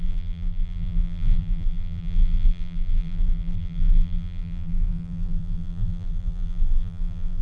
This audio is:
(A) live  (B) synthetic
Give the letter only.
B